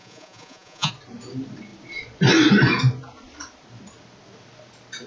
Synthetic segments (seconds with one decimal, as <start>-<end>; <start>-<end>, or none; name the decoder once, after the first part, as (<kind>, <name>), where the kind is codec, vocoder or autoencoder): 0.0-0.9 (vocoder, Vocos)